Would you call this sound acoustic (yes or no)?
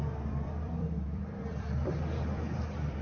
no